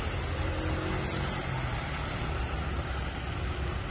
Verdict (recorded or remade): recorded